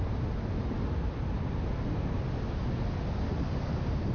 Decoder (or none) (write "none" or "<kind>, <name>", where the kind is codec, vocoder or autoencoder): none